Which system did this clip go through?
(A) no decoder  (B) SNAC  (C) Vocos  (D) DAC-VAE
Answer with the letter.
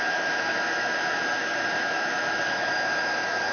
D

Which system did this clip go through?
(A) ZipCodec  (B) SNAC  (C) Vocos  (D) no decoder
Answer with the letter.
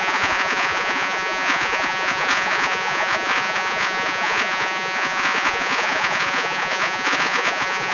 C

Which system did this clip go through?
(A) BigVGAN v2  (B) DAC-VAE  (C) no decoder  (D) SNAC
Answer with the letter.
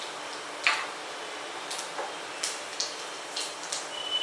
C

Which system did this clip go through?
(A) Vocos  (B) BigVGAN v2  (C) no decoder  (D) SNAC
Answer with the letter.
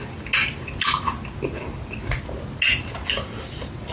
C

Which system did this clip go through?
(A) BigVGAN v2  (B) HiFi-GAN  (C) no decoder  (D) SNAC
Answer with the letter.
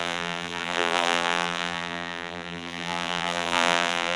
A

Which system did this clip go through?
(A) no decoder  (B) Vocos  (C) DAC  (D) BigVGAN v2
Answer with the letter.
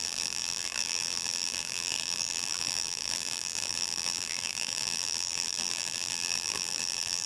D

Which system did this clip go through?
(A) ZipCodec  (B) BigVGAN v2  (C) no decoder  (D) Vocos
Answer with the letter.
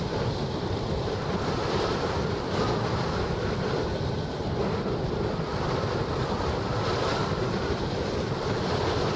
B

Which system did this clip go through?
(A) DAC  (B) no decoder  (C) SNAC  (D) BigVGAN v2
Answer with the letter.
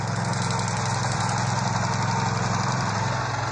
B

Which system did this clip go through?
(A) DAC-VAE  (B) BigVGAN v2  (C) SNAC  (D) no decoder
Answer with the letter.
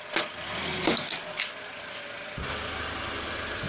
D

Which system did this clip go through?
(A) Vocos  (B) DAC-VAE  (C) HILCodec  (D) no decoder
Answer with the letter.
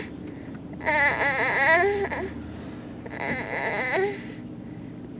D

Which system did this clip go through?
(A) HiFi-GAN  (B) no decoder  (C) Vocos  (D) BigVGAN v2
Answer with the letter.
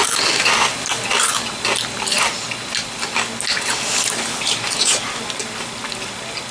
B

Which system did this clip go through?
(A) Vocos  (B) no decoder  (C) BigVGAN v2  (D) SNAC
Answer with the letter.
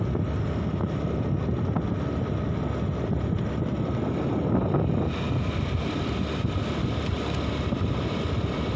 B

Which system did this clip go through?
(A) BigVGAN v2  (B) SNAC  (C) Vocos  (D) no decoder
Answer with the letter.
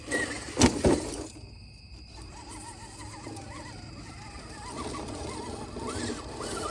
D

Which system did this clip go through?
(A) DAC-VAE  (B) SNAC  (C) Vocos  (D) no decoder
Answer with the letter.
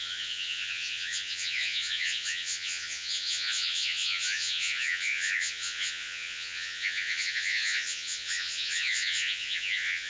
C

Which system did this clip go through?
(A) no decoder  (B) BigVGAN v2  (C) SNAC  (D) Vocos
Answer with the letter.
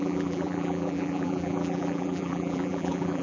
B